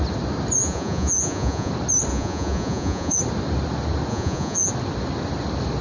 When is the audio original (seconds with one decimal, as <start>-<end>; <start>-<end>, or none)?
0.0-0.6; 1.7-2.1; 3.2-4.1; 4.7-5.8